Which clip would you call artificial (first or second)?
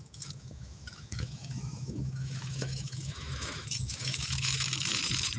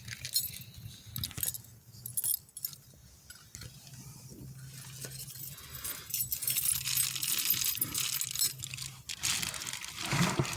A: first